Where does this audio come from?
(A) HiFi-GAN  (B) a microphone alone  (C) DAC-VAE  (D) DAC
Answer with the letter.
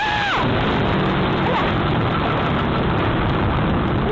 B